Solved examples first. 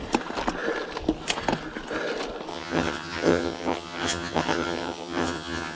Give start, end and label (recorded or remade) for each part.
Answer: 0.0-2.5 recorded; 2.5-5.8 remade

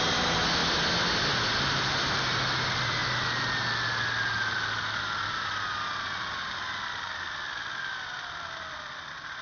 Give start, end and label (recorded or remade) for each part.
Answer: 0.0-0.6 remade; 0.6-1.6 recorded; 1.6-3.0 remade; 3.0-6.0 recorded; 6.0-9.4 remade

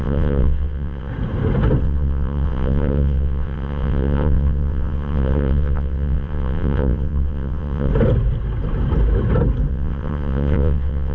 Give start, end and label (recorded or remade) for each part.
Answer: 0.0-1.1 remade; 1.1-1.8 recorded; 1.8-7.9 remade; 7.9-9.7 recorded; 9.7-11.1 remade